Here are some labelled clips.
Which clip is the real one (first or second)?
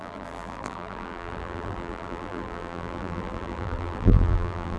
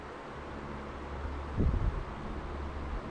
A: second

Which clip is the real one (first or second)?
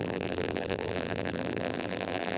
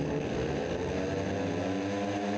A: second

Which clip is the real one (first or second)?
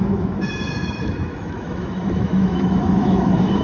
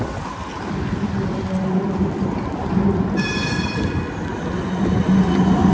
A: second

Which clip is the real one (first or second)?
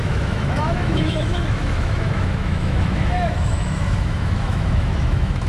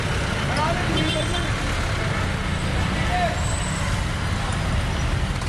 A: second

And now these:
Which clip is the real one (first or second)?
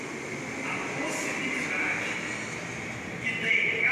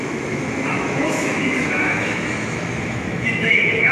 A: first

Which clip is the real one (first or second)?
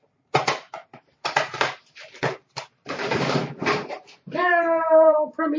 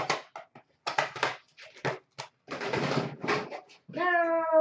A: second